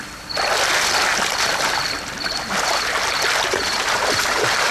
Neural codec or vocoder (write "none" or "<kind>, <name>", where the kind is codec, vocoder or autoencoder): none